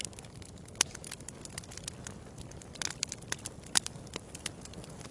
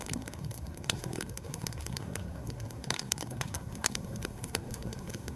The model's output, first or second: second